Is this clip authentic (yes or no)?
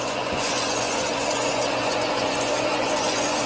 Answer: no